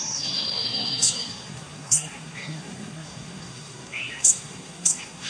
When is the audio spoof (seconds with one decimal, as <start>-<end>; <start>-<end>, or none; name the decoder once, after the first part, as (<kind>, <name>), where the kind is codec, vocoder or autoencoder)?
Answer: 0.0-5.3 (codec, SNAC)